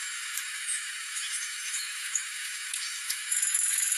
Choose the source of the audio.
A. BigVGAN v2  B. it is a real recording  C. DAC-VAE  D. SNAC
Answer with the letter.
C